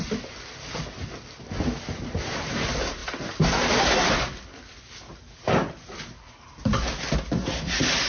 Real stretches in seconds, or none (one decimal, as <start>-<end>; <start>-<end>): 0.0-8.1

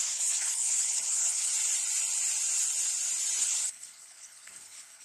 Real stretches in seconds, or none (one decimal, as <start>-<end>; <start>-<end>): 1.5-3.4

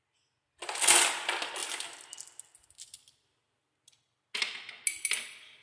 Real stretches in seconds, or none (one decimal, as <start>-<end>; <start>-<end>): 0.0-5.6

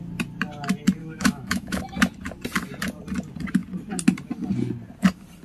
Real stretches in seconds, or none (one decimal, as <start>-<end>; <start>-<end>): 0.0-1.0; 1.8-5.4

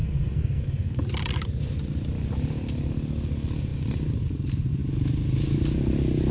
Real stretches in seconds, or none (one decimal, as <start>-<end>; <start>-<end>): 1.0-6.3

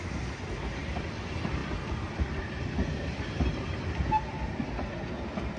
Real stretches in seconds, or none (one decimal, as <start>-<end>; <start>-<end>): 0.0-5.6